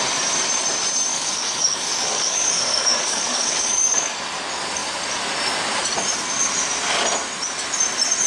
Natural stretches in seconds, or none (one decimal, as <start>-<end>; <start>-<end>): 0.0-1.1; 4.2-8.3